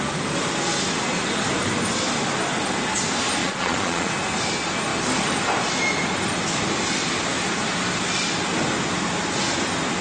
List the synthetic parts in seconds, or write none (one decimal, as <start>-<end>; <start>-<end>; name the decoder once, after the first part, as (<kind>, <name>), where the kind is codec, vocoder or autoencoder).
3.4-4.1 (vocoder, Vocos)

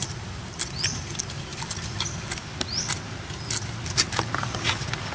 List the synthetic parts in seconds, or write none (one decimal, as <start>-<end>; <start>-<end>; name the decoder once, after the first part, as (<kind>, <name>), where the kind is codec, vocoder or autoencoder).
none

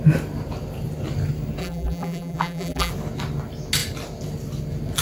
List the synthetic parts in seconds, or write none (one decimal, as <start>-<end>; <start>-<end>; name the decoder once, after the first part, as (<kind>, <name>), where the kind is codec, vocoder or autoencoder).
1.6-2.9 (vocoder, BigVGAN v2)

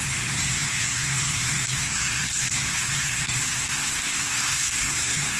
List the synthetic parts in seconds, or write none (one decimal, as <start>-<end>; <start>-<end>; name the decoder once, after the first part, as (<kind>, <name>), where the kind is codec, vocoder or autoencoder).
0.0-5.4 (codec, SNAC)

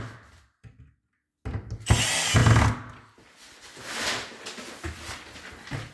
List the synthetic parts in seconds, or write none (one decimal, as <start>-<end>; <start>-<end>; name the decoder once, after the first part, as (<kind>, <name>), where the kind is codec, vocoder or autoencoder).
none

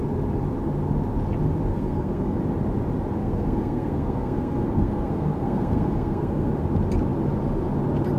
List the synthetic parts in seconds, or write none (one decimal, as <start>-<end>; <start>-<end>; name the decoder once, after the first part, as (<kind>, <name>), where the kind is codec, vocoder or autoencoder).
1.7-2.4 (codec, SNAC); 3.2-6.5

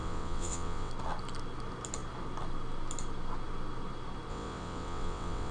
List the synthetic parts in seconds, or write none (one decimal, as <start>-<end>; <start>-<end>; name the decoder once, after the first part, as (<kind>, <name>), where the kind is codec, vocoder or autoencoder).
0.0-0.9 (vocoder, WaveNeXt); 4.3-5.5

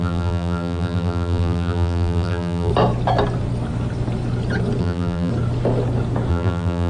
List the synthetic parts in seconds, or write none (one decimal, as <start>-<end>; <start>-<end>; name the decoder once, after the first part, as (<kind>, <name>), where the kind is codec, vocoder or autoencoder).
0.0-2.7 (vocoder, BigVGAN v2); 4.8-5.3; 6.3-6.9